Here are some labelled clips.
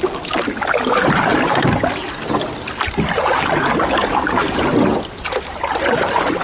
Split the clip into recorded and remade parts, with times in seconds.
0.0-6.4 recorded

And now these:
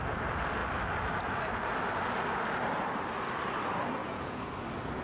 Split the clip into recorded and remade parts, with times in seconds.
0.0-4.0 recorded; 4.0-4.5 remade; 4.5-5.0 recorded

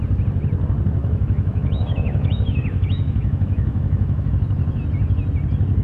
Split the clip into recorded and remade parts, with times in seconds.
0.0-1.0 recorded; 1.0-4.3 remade; 4.3-5.8 recorded

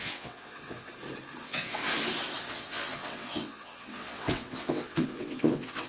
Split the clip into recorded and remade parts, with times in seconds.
0.0-0.9 remade; 0.9-1.4 recorded; 1.4-1.8 remade; 1.8-2.5 recorded; 2.5-5.9 remade

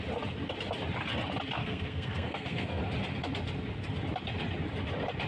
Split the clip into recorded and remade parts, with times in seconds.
0.0-1.6 recorded; 1.6-2.8 remade; 2.8-5.3 recorded

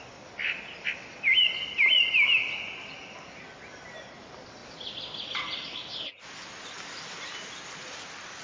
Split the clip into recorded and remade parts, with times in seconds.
0.0-8.4 recorded